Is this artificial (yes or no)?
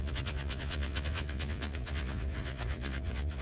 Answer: yes